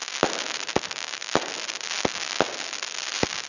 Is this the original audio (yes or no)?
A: yes